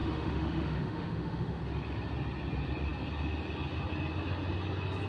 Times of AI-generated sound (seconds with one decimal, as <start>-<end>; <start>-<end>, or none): 0.0-1.6